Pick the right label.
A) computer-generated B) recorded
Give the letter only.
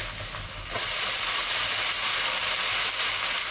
B